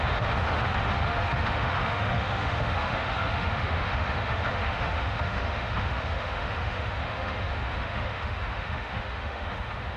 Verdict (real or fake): fake